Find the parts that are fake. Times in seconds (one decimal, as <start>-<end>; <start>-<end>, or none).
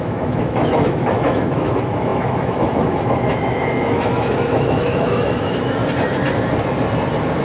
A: 0.0-5.8